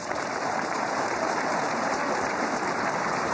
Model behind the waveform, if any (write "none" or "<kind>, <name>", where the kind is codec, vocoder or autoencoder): vocoder, BigVGAN v2